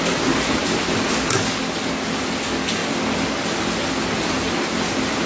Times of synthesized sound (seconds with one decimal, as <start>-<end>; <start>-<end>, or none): none